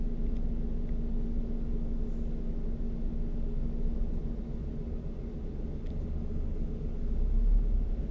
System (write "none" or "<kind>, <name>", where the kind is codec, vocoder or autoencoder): none